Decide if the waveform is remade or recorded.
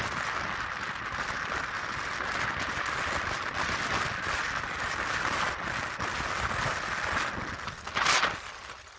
recorded